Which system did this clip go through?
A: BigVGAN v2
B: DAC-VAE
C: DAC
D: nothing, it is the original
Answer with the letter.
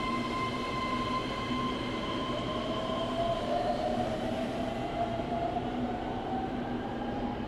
A